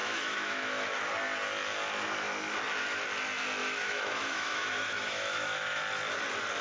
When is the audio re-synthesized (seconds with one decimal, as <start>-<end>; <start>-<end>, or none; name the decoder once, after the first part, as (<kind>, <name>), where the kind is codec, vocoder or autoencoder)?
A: 0.0-1.1 (autoencoder, DAC-VAE); 3.6-5.8